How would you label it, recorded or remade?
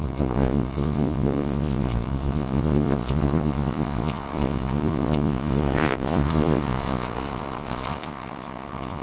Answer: remade